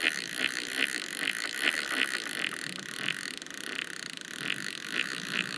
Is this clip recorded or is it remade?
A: recorded